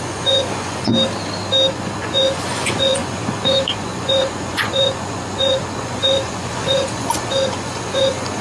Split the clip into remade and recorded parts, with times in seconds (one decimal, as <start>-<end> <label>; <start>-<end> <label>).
0.0-0.9 remade; 0.9-1.7 recorded; 1.7-8.4 remade